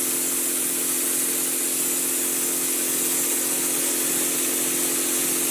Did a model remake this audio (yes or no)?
no